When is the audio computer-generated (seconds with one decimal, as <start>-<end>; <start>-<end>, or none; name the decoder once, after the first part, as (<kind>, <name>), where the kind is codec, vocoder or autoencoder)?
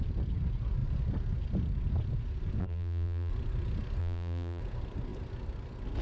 2.6-3.3 (vocoder, BigVGAN v2); 4.0-4.6